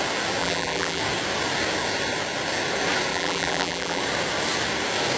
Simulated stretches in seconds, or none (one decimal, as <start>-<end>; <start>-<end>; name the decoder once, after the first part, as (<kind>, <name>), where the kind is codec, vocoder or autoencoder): 0.4-1.0 (vocoder, BigVGAN v2); 3.1-4.0